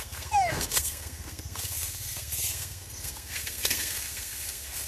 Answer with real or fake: fake